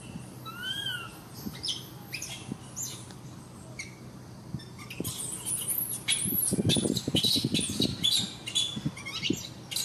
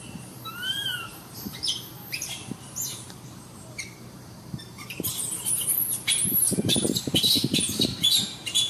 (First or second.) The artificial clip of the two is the second